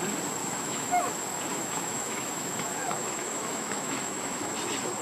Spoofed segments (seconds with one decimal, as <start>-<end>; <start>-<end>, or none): 0.4-1.1; 1.5-4.5